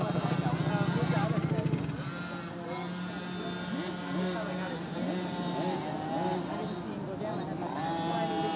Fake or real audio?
real